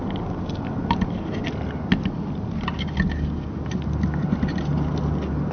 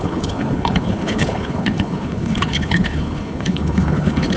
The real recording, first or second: first